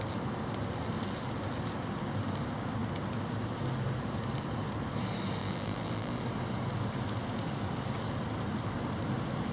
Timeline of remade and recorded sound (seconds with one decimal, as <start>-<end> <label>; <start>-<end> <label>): 0.0-5.4 recorded; 5.4-6.2 remade; 6.2-9.5 recorded